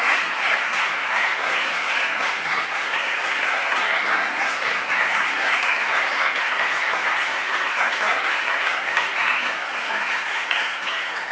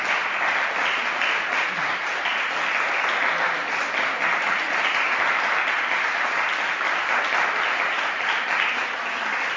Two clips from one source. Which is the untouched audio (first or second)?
second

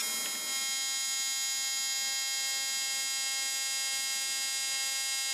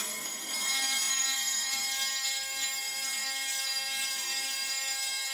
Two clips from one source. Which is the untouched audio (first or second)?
first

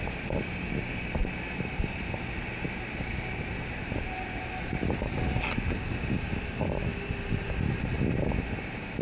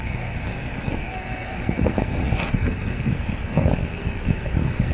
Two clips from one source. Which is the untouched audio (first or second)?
first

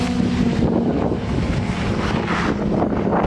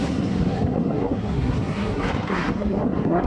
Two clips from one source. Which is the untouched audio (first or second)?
first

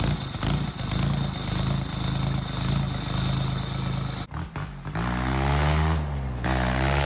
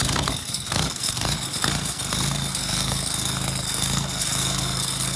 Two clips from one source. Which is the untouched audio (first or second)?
first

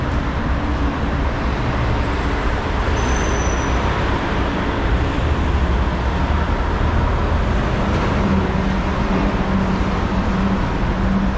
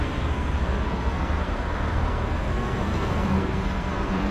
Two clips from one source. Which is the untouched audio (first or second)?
first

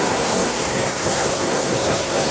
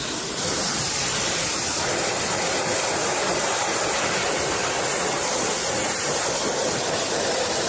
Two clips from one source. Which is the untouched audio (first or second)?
second